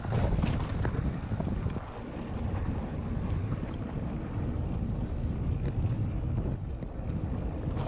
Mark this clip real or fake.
real